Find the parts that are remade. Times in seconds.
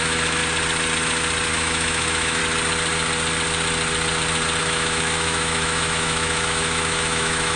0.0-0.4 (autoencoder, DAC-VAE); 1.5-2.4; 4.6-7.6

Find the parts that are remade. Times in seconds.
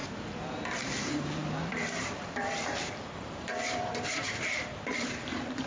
0.9-5.7 (vocoder, BigVGAN v2)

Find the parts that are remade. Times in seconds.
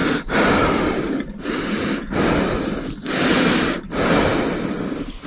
0.0-5.3 (vocoder, BigVGAN v2)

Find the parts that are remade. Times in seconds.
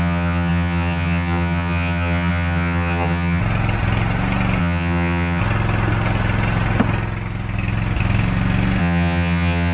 0.0-3.4 (vocoder, HiFi-GAN); 4.6-5.4; 8.8-9.7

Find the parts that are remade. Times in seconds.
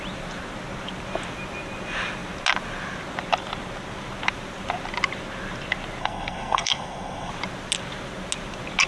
6.0-7.3 (codec, SNAC)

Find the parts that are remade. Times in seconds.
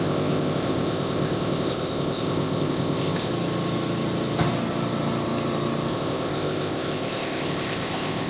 0.0-3.3 (codec, ZipCodec); 5.9-8.3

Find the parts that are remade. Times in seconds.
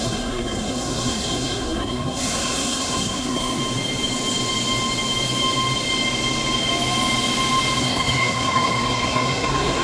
0.0-3.6 (codec, SNAC); 7.8-9.8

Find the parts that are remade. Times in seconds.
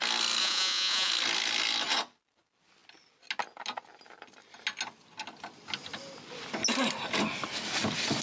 0.4-1.1 (vocoder, Vocos)